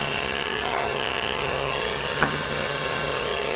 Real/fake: fake